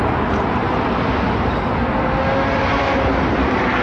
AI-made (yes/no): no